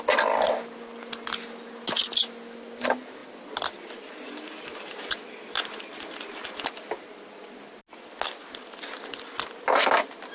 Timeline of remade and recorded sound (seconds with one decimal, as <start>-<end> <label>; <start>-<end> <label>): 0.0-10.3 recorded